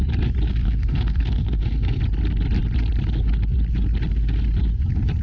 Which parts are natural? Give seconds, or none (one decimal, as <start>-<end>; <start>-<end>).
0.0-0.6; 2.0-5.2